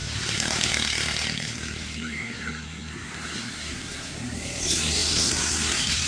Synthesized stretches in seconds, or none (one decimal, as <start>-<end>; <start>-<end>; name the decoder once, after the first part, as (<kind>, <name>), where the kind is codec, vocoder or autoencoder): 0.0-6.1 (codec, SNAC)